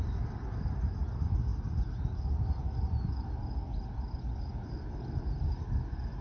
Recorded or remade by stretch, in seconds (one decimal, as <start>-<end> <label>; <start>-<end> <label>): 0.0-6.2 recorded